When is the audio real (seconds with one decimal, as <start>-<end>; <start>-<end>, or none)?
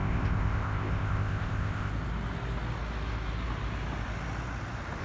1.9-5.0